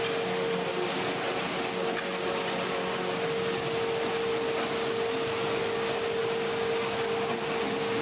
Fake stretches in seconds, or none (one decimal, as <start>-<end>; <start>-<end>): none